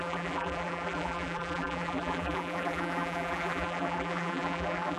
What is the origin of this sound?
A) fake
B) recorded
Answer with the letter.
A